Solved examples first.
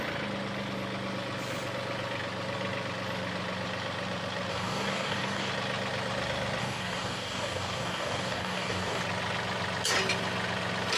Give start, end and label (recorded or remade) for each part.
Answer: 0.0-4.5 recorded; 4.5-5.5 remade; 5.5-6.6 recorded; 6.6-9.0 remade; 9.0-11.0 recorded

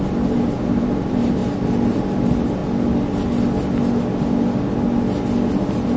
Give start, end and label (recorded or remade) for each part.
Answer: 0.0-1.4 remade; 1.4-1.9 recorded; 1.9-2.6 remade; 2.6-5.5 recorded; 5.5-6.0 remade

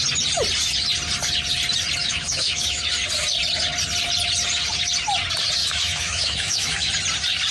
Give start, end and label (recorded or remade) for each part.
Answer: 0.0-2.0 recorded; 2.0-2.8 remade; 2.8-5.6 recorded; 5.6-6.9 remade; 6.9-7.5 recorded

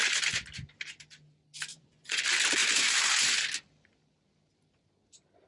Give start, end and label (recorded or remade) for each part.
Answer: 0.0-1.7 recorded; 1.7-2.2 remade; 2.2-5.5 recorded

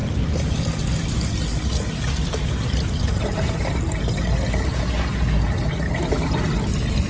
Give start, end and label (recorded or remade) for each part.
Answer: 0.0-7.1 recorded

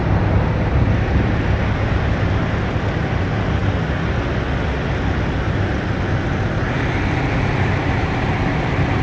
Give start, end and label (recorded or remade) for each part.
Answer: 0.0-3.2 recorded; 3.2-3.6 remade; 3.6-7.4 recorded; 7.4-9.0 remade

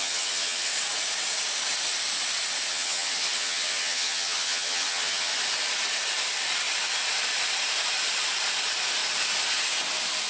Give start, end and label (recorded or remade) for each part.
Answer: 0.0-0.7 remade; 0.7-2.7 recorded; 2.7-5.3 remade; 5.3-10.3 recorded